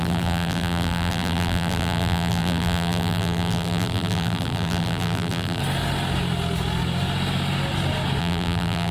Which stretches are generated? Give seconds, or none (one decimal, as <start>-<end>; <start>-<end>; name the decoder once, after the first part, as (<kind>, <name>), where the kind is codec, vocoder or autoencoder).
0.0-5.6 (vocoder, BigVGAN v2); 8.2-8.9